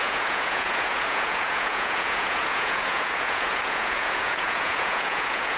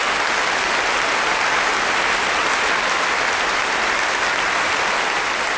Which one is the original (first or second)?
second